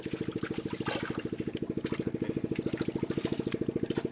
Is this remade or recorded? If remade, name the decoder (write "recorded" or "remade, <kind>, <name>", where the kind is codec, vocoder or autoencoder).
recorded